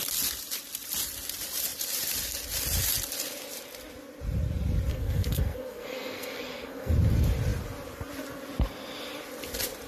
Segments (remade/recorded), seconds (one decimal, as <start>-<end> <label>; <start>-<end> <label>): 0.0-4.9 recorded; 4.9-6.9 remade; 6.9-9.9 recorded